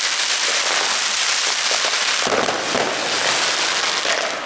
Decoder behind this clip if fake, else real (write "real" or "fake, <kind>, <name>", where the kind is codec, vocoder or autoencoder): real